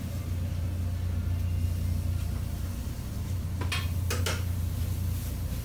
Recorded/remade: recorded